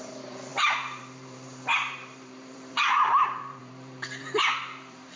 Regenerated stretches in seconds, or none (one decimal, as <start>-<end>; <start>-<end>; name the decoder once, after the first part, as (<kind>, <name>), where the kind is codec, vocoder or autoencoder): 0.0-5.2 (vocoder, BigVGAN v2)